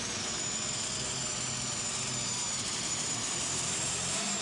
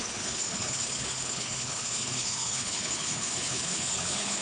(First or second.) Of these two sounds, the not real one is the second